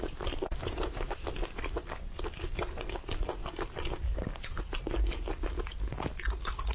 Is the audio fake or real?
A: real